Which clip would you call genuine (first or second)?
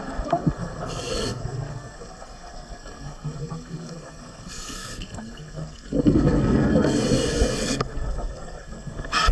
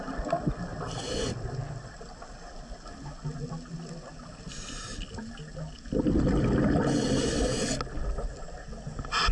second